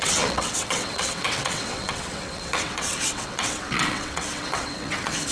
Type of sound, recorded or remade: remade